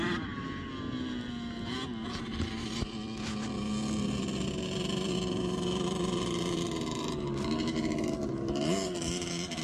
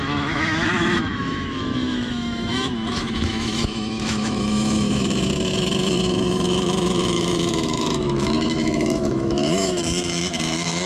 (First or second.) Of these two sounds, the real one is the first